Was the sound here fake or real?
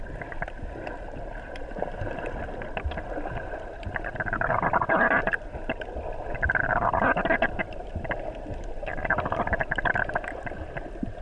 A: real